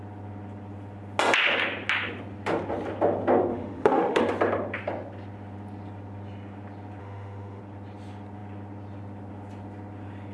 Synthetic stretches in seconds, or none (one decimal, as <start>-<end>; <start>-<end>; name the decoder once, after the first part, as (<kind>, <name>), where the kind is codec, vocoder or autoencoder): 3.5-4.2 (autoencoder, DAC-VAE); 7.0-7.6